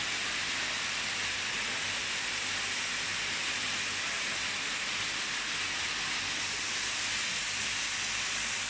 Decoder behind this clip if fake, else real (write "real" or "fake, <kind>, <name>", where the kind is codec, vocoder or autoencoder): real